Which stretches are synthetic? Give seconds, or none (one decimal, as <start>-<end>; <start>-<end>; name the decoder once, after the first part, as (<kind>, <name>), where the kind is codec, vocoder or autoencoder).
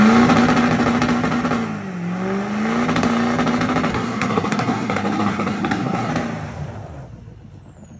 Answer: 3.9-6.1 (codec, SNAC)